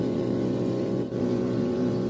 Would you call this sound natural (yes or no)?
no